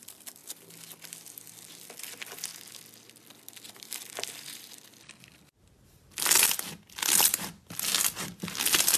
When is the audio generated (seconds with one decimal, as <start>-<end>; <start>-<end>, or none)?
none